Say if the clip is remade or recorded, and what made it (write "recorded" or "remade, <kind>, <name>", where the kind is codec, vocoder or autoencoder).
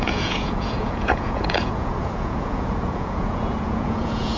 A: remade, vocoder, Vocos